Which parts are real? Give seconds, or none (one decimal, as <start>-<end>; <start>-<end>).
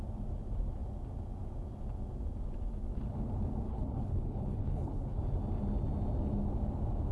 0.0-3.7; 5.2-7.1